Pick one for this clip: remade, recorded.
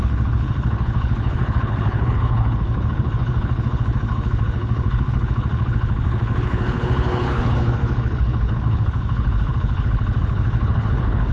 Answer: remade